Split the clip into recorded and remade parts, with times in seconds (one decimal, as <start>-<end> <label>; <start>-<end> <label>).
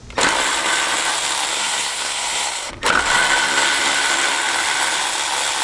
0.0-1.5 recorded; 1.5-2.7 remade; 2.7-5.6 recorded